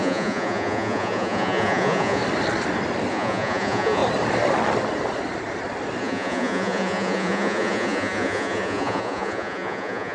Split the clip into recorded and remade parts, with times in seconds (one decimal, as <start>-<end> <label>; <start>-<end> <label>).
0.0-2.2 remade; 2.2-3.1 recorded; 3.1-4.0 remade; 4.0-6.0 recorded; 6.0-10.1 remade